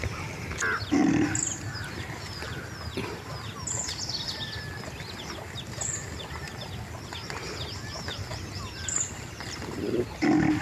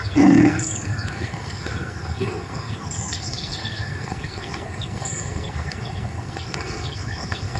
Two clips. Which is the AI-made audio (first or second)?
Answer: second